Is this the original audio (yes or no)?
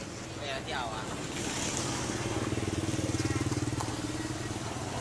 yes